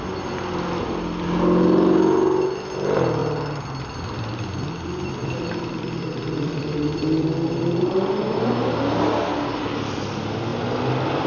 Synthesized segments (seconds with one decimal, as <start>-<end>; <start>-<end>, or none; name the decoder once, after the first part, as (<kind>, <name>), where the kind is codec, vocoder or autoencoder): 3.2-4.7 (vocoder, BigVGAN v2); 5.2-8.4